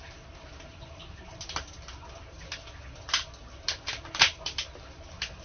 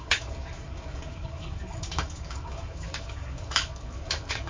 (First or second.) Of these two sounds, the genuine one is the first